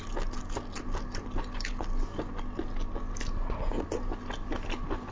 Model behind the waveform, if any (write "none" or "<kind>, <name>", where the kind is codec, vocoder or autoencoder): none